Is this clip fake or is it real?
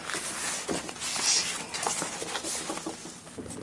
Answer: real